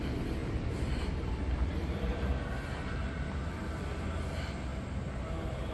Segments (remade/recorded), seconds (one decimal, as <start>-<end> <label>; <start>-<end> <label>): 0.0-0.4 recorded; 0.4-3.8 remade; 3.8-5.7 recorded